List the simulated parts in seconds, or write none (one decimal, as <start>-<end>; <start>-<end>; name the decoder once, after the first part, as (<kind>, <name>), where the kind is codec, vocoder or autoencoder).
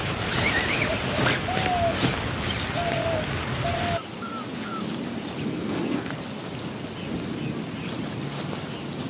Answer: 5.5-6.1 (codec, SNAC)